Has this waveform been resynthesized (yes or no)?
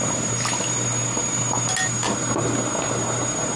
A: no